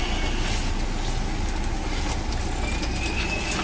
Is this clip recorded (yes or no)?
yes